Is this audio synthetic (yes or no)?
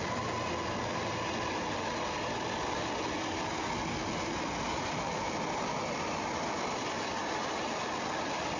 no